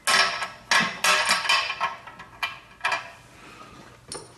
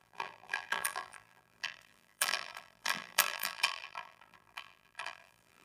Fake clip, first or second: second